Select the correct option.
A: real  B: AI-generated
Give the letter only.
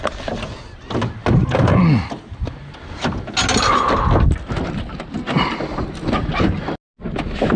A